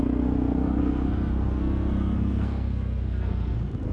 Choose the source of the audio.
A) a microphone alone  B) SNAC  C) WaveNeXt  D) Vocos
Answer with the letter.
B